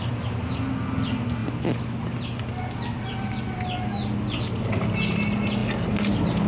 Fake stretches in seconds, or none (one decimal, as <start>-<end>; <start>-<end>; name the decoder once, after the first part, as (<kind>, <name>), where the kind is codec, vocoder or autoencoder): none